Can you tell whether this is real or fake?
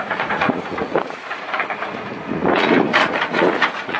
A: fake